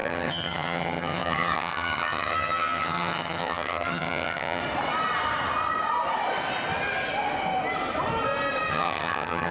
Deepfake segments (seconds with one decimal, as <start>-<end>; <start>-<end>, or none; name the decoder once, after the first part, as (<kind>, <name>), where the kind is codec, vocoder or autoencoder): 0.0-4.6 (vocoder, HiFi-GAN); 8.7-9.5

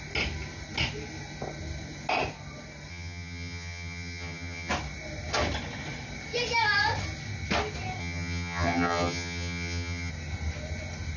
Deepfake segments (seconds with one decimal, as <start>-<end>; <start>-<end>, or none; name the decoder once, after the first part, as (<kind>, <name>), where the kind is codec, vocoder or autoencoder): 2.9-4.7 (vocoder, HiFi-GAN); 8.0-10.1